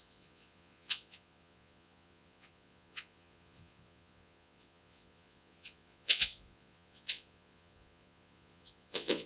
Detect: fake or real fake